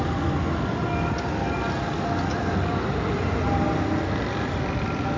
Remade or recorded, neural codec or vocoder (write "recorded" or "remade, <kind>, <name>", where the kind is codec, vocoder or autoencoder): recorded